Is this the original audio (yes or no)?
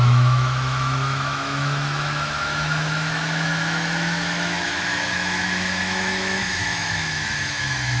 no